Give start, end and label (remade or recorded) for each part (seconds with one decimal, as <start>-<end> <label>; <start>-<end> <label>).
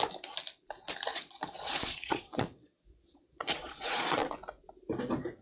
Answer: 0.0-1.1 recorded; 1.1-4.3 remade; 4.3-5.4 recorded